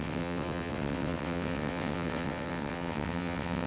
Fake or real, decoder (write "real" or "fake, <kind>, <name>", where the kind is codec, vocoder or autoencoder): fake, vocoder, WaveNeXt